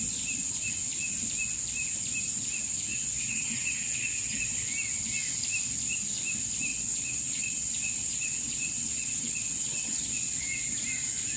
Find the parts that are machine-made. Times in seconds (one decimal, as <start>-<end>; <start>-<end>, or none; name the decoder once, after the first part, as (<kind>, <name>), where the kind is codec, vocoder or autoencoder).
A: 2.9-4.4 (vocoder, WaveNeXt); 6.7-10.6